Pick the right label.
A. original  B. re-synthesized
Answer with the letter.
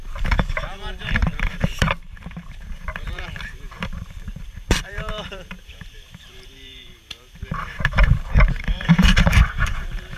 B